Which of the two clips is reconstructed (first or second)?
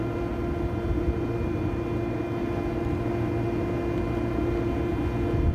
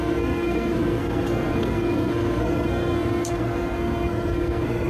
second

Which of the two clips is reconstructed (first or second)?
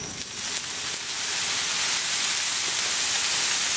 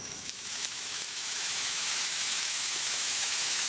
second